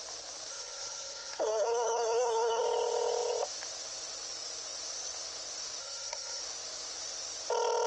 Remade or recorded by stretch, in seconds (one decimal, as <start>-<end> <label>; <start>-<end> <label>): 0.0-0.5 recorded; 0.5-2.6 remade; 2.6-5.8 recorded; 5.8-6.4 remade; 6.4-7.9 recorded